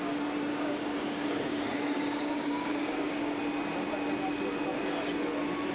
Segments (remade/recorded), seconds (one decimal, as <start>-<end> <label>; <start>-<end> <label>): 0.0-0.5 recorded; 0.5-3.4 remade; 3.4-5.7 recorded